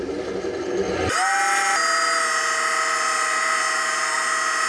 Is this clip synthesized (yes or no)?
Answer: no